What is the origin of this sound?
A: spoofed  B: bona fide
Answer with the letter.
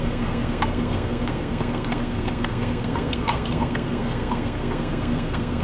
A